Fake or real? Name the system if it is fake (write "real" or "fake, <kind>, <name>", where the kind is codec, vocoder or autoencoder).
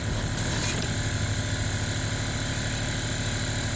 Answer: real